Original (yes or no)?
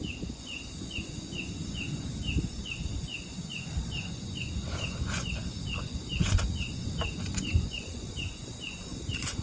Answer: no